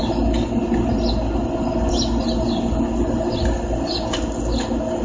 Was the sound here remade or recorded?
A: recorded